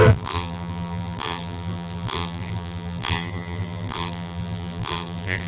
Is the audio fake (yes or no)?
yes